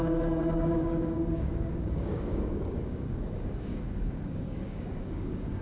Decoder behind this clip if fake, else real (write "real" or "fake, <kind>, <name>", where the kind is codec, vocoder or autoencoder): fake, codec, DAC